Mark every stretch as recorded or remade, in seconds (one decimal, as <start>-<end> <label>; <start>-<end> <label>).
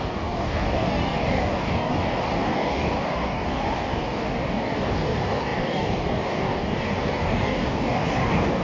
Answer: 0.0-8.6 remade